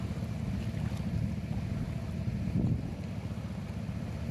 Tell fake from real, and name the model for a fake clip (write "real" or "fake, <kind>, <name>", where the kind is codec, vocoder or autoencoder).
real